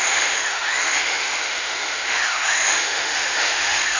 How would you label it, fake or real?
fake